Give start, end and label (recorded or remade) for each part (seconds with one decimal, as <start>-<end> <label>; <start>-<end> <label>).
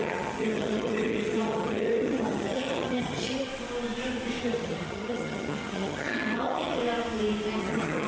0.0-3.5 remade; 3.5-4.4 recorded; 4.4-6.8 remade; 6.8-7.6 recorded; 7.6-8.1 remade